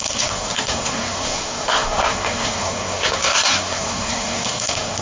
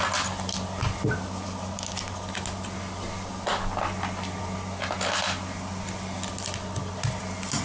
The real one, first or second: second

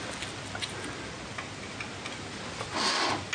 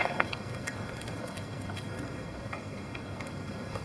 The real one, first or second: first